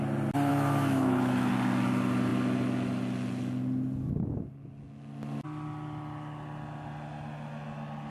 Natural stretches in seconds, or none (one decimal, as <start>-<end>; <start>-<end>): 0.0-0.5; 1.5-8.1